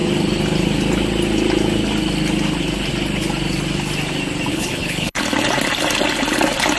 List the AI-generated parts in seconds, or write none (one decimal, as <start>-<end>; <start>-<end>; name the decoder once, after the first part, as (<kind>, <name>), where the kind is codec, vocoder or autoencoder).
4.5-5.2 (codec, HILCodec)